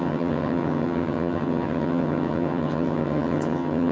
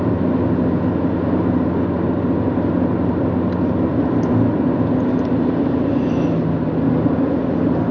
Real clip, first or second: second